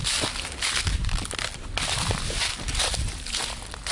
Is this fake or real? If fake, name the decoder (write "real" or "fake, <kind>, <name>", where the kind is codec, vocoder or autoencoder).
real